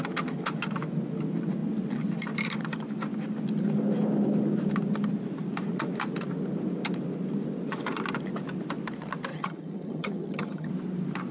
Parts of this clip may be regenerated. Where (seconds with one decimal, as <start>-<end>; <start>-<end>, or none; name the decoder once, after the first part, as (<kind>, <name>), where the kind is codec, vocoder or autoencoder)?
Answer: 9.3-10.7 (vocoder, HiFi-GAN)